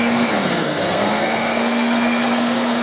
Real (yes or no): no